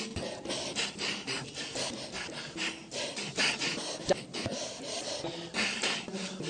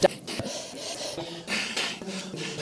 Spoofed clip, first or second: first